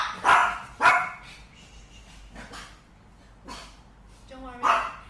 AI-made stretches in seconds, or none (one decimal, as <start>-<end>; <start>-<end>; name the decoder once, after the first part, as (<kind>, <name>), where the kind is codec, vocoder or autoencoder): none